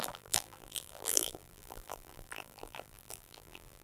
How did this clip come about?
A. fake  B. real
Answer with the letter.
A